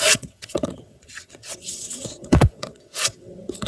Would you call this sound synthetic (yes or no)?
yes